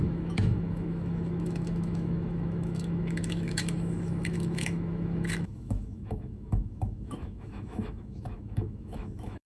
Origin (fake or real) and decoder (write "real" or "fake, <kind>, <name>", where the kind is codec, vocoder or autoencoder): fake, autoencoder, DAC-VAE